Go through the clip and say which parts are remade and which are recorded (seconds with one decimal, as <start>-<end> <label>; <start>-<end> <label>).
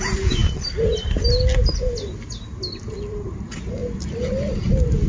0.0-0.4 remade; 0.4-3.1 recorded; 3.1-3.8 remade; 3.8-5.1 recorded